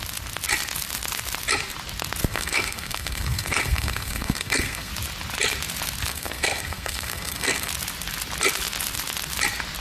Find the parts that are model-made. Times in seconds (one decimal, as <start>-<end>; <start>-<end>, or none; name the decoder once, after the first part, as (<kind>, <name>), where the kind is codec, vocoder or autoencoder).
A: 2.2-4.9 (codec, SNAC); 6.1-7.7